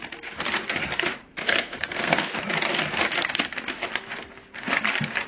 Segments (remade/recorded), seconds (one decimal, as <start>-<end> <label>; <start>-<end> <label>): 0.0-1.4 recorded; 1.4-2.4 remade; 2.4-5.3 recorded